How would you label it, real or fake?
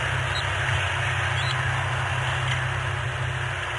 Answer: real